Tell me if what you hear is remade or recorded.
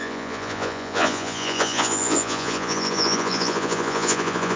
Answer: remade